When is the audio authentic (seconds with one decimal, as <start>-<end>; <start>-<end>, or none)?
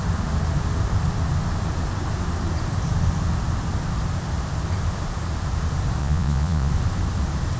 0.0-6.0; 6.7-7.6